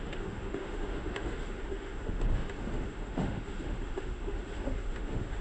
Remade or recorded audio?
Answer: remade